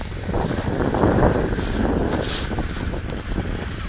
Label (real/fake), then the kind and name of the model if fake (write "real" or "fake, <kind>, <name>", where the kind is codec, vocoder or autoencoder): real